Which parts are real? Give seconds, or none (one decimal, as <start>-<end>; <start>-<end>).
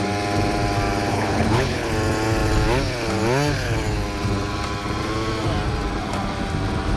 0.0-1.1; 1.9-7.0